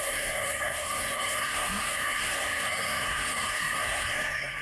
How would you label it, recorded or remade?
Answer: remade